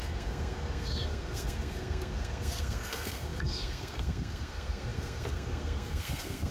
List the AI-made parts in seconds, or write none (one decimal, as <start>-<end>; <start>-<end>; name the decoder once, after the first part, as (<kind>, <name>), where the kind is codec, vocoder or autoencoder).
0.0-6.5 (codec, SNAC)